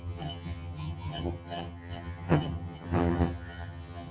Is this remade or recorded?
remade